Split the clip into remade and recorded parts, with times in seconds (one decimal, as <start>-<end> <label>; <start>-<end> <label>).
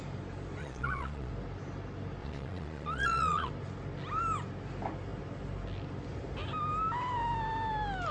0.0-0.6 recorded; 0.6-1.3 remade; 1.3-2.2 recorded; 2.2-3.5 remade; 3.5-8.1 recorded